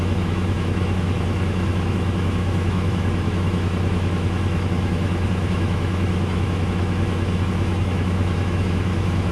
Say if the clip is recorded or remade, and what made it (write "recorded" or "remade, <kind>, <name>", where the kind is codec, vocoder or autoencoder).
remade, autoencoder, DAC-VAE